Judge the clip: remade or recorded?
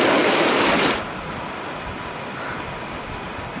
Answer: recorded